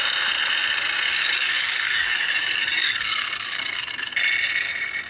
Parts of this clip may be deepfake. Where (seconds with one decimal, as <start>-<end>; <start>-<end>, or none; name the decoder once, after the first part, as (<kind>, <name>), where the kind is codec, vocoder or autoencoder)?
1.2-4.1 (codec, DAC)